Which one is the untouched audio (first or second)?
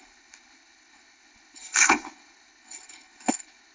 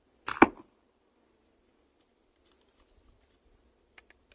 second